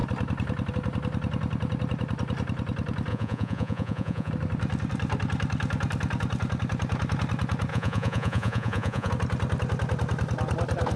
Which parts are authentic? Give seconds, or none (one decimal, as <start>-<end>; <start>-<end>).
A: 0.0-3.1; 4.3-7.7; 9.1-11.0